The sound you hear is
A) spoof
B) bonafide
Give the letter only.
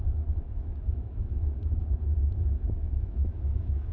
A